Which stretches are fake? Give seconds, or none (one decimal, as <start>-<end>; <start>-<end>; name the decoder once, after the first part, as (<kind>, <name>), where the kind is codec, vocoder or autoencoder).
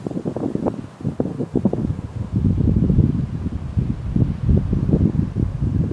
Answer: 1.3-2.3 (autoencoder, DAC-VAE)